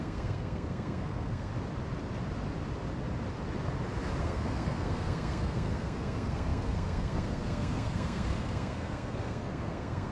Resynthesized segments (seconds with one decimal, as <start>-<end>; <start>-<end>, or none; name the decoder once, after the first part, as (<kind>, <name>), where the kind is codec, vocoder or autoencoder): 0.0-1.5 (codec, SNAC); 4.2-10.1